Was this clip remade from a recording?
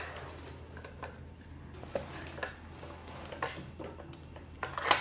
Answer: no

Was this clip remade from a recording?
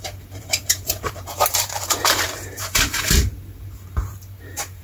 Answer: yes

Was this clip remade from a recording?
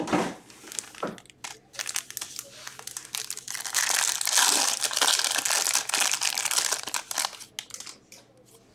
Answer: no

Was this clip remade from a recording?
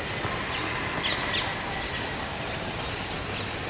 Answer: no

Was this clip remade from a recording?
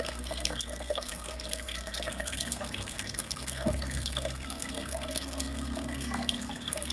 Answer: yes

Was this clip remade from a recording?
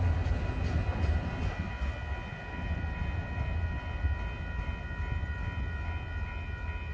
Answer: no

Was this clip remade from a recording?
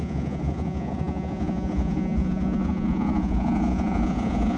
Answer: yes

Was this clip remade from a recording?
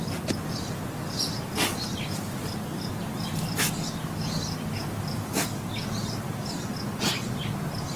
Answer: no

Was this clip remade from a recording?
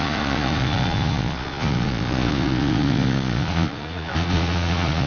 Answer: yes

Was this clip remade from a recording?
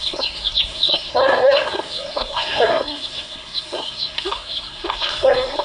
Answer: yes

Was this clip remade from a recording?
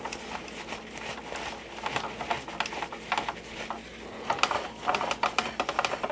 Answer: no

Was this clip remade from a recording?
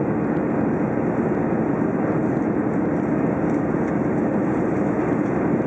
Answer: no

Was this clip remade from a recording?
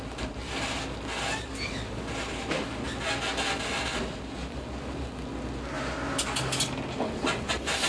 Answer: no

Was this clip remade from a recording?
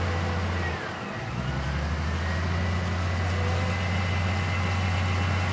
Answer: no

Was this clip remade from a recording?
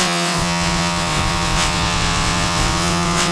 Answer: yes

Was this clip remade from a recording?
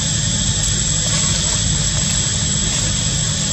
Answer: no